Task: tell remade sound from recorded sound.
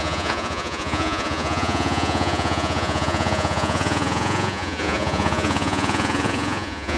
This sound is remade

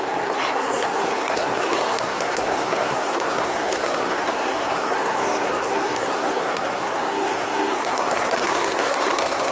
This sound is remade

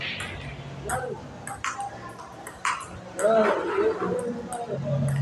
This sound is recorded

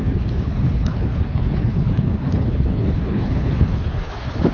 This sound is remade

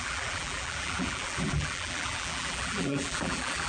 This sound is remade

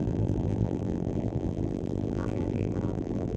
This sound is remade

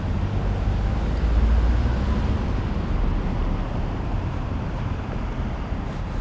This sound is recorded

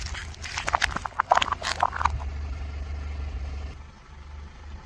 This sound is recorded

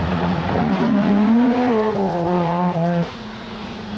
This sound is remade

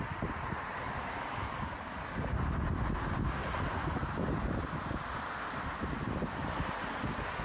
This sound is recorded